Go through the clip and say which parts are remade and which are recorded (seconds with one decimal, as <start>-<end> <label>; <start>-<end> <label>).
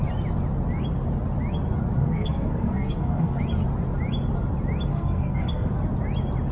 0.0-2.0 recorded; 2.0-3.4 remade; 3.4-4.9 recorded; 4.9-5.7 remade; 5.7-6.5 recorded